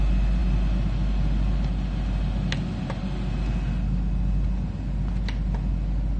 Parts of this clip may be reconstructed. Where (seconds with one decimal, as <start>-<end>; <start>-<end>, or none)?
none